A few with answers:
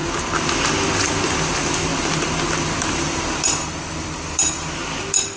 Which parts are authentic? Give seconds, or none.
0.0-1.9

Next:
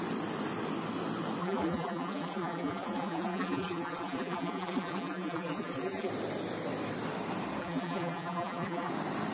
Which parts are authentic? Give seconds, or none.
0.0-1.4; 6.1-7.6; 8.9-9.3

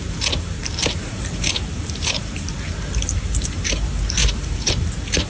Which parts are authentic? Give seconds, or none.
0.0-0.6; 3.8-4.2; 4.7-5.3

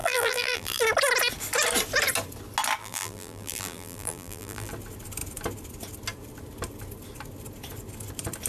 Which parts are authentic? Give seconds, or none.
0.8-2.8; 4.7-8.5

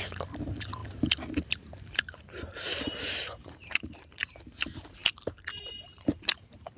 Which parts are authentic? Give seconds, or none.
none